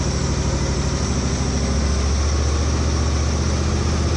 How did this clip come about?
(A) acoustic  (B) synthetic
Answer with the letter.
A